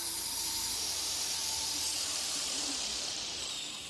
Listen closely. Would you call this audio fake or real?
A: fake